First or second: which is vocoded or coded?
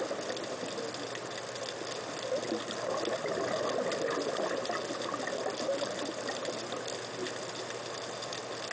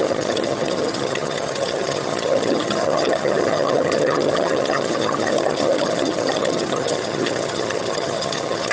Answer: second